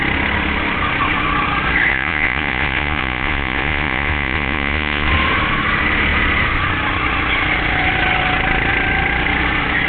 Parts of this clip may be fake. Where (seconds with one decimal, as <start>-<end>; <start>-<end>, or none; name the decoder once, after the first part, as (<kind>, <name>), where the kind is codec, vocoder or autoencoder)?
1.9-5.1 (vocoder, Vocos)